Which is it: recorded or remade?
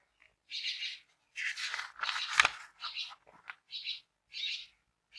recorded